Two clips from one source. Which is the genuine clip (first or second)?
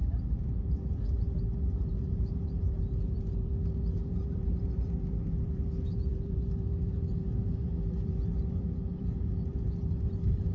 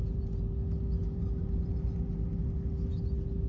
second